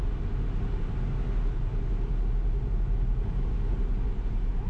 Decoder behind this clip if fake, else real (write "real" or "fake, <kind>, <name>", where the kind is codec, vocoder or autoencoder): real